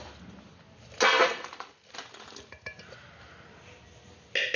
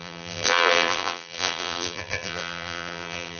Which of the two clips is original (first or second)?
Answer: first